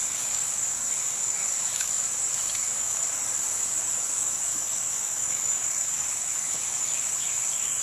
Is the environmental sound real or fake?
fake